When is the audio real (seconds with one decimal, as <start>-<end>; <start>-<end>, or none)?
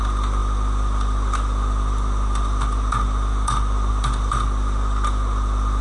0.0-5.8